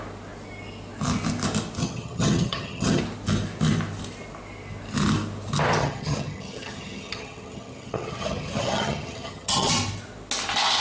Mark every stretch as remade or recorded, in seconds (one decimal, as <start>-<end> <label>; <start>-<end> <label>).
0.0-1.8 recorded; 1.8-3.0 remade; 3.0-5.8 recorded; 5.8-9.7 remade; 9.7-10.8 recorded